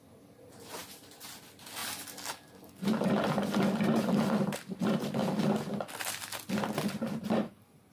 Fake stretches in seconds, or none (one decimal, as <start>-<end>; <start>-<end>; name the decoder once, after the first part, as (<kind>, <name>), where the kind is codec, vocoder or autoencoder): 1.8-3.3 (vocoder, BigVGAN v2)